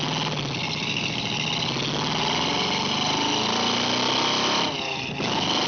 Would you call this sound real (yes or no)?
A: yes